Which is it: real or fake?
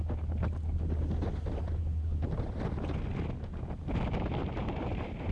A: real